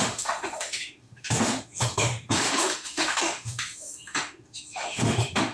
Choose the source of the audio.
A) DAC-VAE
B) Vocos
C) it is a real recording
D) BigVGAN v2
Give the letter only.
A